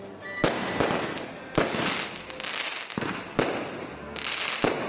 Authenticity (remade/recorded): recorded